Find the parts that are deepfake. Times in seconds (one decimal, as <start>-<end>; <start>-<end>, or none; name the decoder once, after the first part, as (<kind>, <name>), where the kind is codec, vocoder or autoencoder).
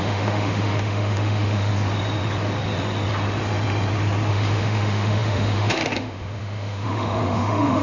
0.0-1.7 (autoencoder, DAC-VAE); 4.3-7.8